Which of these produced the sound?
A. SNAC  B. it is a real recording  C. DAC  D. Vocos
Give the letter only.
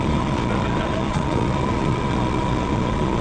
D